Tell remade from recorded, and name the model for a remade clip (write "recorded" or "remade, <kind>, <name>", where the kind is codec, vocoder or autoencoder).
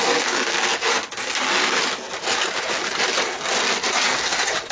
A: recorded